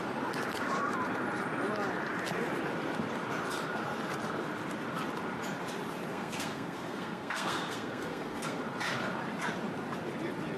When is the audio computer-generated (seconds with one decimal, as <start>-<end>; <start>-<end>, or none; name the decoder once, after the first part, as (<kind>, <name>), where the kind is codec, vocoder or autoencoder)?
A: 6.1-8.6 (codec, SNAC)